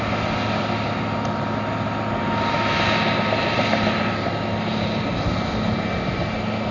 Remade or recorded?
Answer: recorded